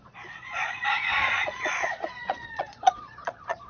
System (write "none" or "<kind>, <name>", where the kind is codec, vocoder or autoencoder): vocoder, Vocos